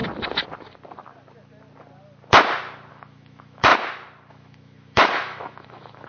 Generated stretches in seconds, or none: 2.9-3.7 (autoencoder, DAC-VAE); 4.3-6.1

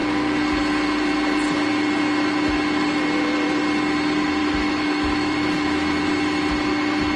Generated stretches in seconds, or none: 4.4-6.0 (autoencoder, DAC-VAE)

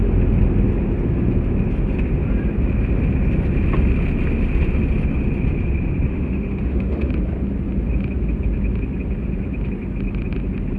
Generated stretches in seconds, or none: 6.1-7.1 (autoencoder, DAC-VAE)